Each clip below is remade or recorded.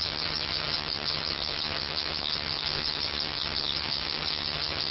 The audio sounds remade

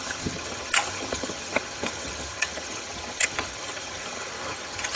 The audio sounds remade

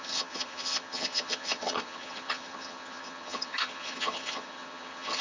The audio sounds remade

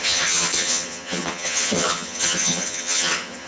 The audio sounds remade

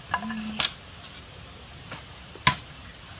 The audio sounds recorded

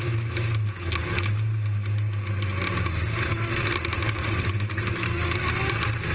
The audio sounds recorded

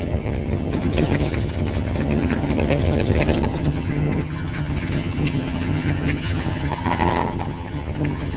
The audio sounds remade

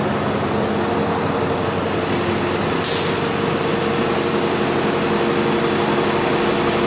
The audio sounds recorded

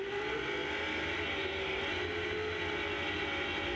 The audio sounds recorded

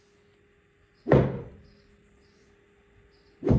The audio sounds recorded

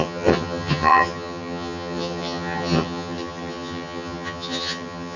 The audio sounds remade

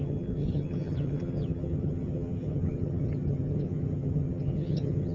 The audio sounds remade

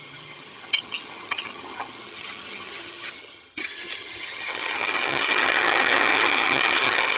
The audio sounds remade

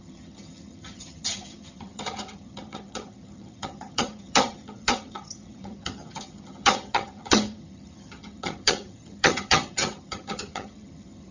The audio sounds remade